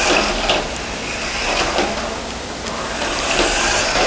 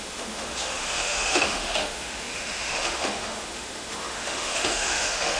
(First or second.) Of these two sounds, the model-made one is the second